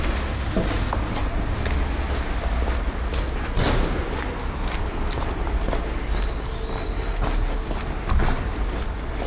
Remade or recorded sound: recorded